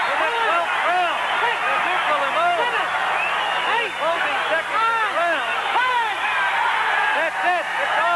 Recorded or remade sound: recorded